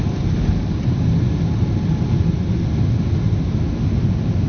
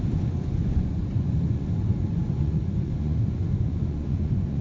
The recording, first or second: first